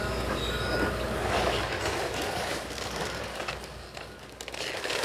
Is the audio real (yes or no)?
no